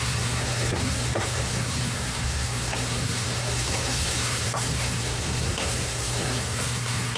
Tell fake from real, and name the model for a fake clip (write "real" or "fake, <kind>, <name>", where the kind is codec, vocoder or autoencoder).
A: fake, codec, SNAC